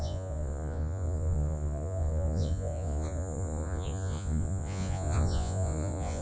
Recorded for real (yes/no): no